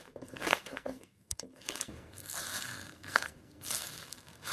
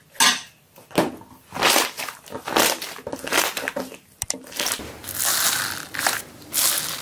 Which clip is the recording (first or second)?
second